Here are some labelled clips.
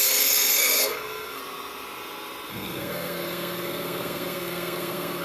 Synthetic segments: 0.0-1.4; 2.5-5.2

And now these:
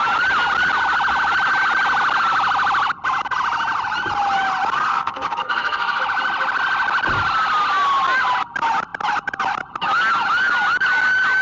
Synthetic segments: 4.9-6.0

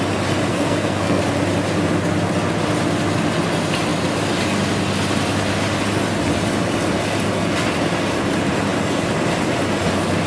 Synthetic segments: 0.5-1.2